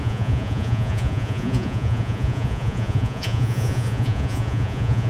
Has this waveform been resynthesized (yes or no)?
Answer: yes